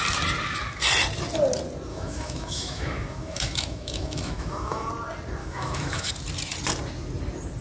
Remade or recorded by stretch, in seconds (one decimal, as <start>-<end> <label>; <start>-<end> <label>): 0.0-1.9 recorded; 1.9-4.9 remade; 4.9-5.4 recorded; 5.4-6.1 remade; 6.1-7.6 recorded